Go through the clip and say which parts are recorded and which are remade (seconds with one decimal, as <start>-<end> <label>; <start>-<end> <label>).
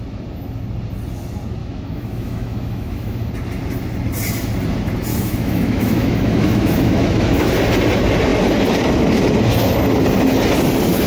0.0-1.6 recorded; 1.6-3.3 remade; 3.3-5.1 recorded; 5.1-7.5 remade; 7.5-11.1 recorded